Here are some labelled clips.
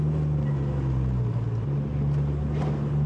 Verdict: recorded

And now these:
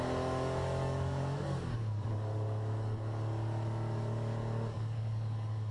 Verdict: remade